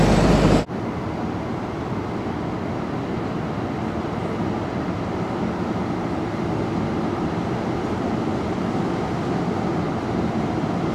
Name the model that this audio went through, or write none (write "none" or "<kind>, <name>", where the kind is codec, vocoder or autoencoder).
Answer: none